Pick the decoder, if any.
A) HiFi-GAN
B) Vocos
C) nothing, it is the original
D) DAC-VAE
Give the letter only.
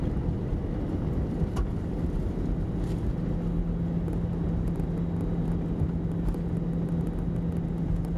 C